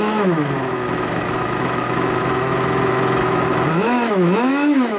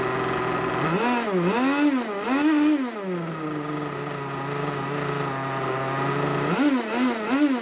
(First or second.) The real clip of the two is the second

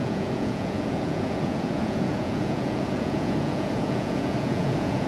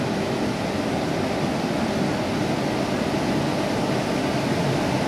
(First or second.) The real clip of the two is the second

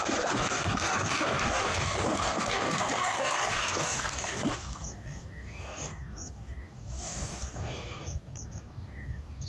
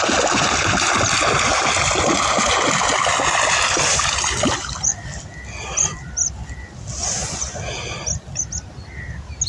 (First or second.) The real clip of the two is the second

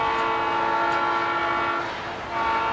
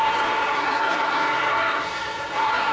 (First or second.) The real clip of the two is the first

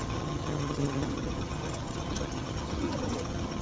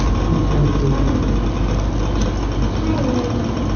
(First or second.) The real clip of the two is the second